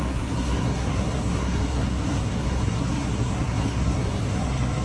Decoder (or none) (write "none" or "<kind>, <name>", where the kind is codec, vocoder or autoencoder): codec, SNAC